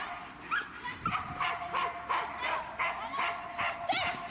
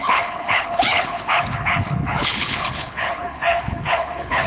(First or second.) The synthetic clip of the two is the second